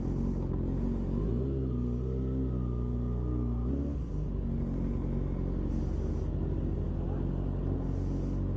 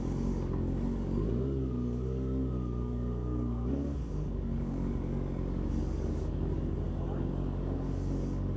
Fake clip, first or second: second